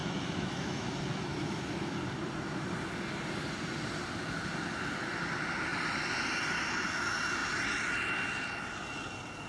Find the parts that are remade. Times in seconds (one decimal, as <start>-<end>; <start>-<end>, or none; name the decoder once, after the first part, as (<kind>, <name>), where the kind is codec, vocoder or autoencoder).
0.0-2.0 (autoencoder, DAC-VAE)